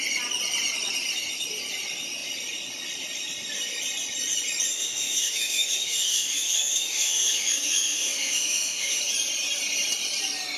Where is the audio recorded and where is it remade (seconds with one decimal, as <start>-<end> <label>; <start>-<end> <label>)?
0.0-4.7 recorded; 4.7-9.0 remade; 9.0-10.6 recorded